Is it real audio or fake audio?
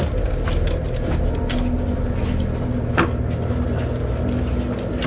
real